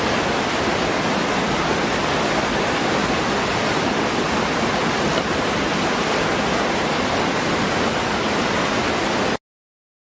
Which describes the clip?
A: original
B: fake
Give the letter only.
A